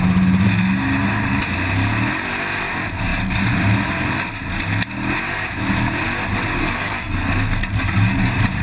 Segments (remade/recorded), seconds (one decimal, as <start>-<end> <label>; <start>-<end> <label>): 0.0-6.6 recorded; 6.6-7.5 remade; 7.5-8.6 recorded

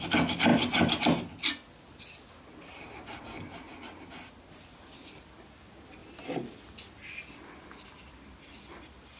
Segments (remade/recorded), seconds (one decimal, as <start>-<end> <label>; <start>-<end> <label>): 0.0-9.2 recorded

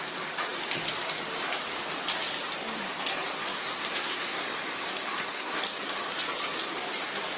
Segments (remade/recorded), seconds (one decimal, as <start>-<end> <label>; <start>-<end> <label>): 0.0-3.6 recorded; 3.6-4.4 remade; 4.4-5.1 recorded; 5.1-5.6 remade; 5.6-7.4 recorded

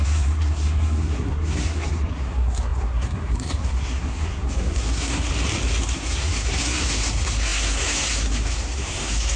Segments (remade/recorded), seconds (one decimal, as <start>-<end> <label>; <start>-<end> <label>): 0.0-5.3 remade; 5.3-5.8 recorded; 5.8-9.4 remade

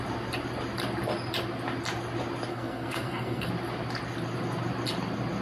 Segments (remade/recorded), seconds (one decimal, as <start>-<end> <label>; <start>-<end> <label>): 0.0-2.5 recorded; 2.5-3.5 remade; 3.5-5.4 recorded

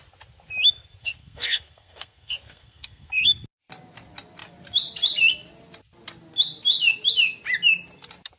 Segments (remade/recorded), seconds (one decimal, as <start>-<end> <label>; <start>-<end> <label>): 0.0-1.0 recorded; 1.0-3.4 remade; 3.4-8.4 recorded

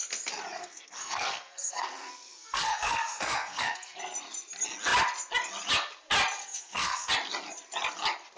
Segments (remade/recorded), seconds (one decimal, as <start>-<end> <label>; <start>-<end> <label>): 0.0-0.6 recorded; 0.6-4.0 remade; 4.0-6.4 recorded; 6.4-7.1 remade; 7.1-8.4 recorded